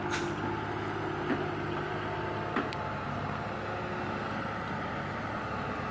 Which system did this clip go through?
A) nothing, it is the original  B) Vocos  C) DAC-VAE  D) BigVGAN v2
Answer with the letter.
A